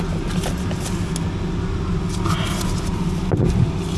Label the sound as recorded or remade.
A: recorded